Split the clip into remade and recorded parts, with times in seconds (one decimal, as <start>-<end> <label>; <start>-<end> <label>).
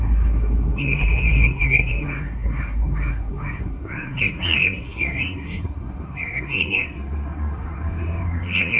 0.0-8.8 remade